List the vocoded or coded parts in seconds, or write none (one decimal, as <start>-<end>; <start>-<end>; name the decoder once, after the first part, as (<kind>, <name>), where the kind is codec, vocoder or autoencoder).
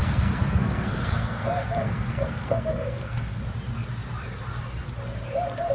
0.0-3.4 (codec, SNAC)